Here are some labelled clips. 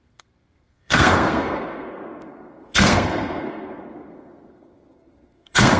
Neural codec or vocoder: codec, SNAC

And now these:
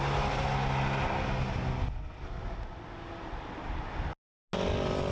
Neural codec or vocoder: none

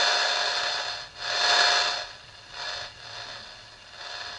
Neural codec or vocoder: none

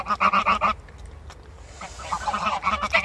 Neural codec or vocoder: none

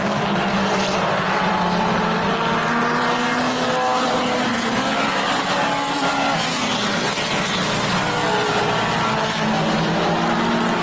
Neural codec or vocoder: none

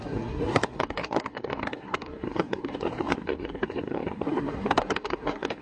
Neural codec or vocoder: codec, SNAC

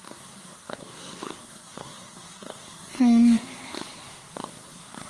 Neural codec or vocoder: codec, SNAC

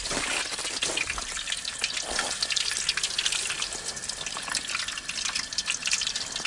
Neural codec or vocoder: none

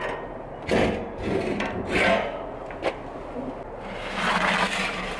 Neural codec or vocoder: none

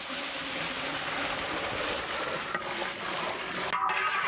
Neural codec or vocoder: none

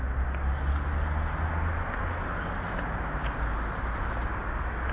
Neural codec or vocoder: none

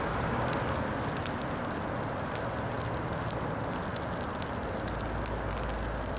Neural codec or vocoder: none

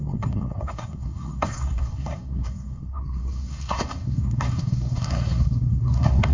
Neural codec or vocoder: codec, SNAC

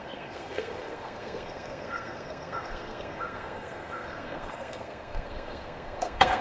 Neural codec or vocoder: codec, SNAC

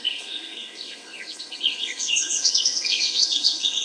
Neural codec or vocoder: codec, SNAC